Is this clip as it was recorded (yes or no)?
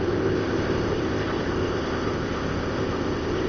no